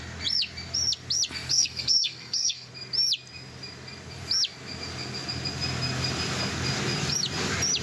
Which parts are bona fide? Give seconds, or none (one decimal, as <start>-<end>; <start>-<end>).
0.0-1.5; 2.7-7.8

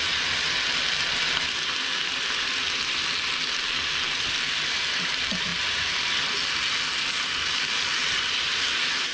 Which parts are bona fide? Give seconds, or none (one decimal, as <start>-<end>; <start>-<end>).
0.0-9.1

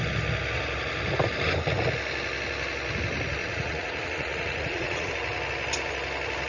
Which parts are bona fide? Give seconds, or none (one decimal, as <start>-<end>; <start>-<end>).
0.0-3.4; 5.1-6.5

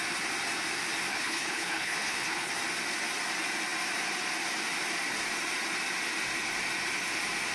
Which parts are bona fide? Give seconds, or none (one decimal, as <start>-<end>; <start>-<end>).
0.0-1.1; 2.5-7.5

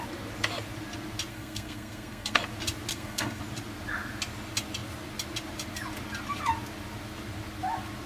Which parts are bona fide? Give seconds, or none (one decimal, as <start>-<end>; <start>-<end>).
0.0-1.3; 2.4-2.9; 3.4-8.1